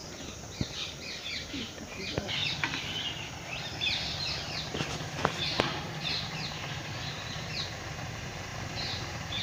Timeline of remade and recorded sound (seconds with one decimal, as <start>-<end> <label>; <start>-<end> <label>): 0.0-1.2 recorded; 1.2-2.4 remade; 2.4-3.4 recorded; 3.4-9.4 remade